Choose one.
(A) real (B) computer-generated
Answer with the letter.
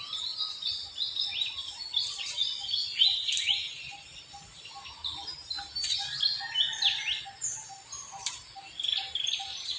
A